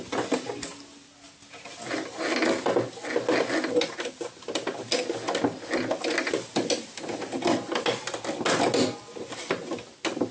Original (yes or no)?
yes